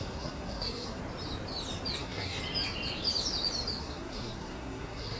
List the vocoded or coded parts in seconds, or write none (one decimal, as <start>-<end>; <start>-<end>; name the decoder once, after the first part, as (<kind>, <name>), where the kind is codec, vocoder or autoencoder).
0.0-1.0 (codec, SNAC); 2.0-2.4; 3.8-5.2